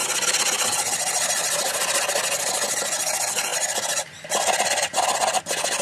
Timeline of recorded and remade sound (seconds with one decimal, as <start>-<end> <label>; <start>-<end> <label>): 0.0-5.8 recorded